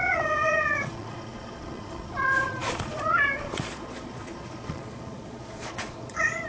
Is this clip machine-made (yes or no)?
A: yes